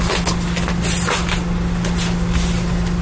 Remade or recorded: recorded